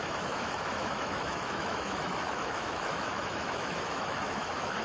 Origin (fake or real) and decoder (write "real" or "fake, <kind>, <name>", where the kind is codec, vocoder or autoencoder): fake, autoencoder, DAC-VAE